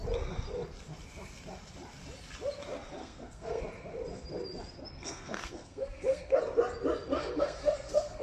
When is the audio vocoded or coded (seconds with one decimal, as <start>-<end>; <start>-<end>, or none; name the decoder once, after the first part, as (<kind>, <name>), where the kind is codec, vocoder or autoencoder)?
3.0-3.6 (codec, SNAC); 5.0-6.4; 7.1-8.2